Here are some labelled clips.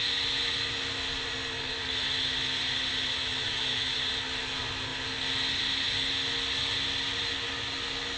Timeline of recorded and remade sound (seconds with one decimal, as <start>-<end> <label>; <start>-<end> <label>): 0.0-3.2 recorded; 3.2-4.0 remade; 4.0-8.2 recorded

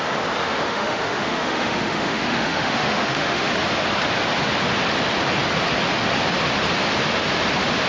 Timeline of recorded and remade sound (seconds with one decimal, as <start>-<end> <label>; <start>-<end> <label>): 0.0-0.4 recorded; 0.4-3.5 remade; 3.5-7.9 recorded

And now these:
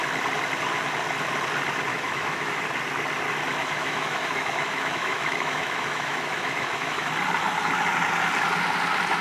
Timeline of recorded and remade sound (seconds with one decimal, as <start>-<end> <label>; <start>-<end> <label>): 0.0-1.9 recorded; 1.9-2.6 remade; 2.6-3.6 recorded; 3.6-7.1 remade; 7.1-9.2 recorded

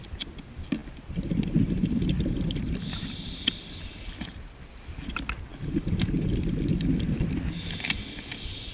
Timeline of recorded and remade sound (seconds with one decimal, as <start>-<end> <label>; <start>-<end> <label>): 0.0-8.7 recorded

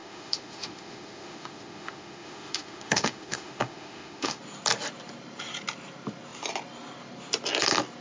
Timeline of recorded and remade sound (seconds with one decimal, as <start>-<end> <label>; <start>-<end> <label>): 0.0-4.4 remade; 4.4-8.0 recorded

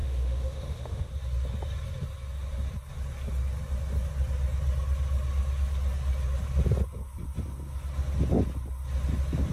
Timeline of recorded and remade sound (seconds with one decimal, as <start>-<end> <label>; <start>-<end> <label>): 0.0-1.1 remade; 1.1-9.5 recorded

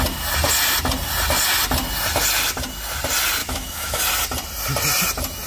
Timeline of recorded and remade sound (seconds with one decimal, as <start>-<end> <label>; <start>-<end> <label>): 0.0-3.4 recorded; 3.4-4.0 remade; 4.0-5.5 recorded